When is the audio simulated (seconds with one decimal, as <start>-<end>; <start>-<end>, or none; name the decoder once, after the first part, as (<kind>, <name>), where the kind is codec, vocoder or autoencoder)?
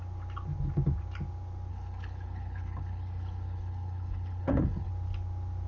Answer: 1.7-4.9 (codec, HILCodec)